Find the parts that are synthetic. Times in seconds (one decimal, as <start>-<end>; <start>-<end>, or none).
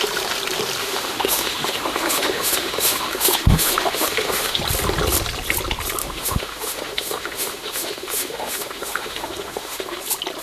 0.8-4.6; 6.0-10.0